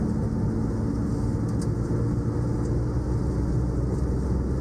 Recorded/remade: recorded